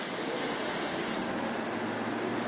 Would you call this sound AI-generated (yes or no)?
no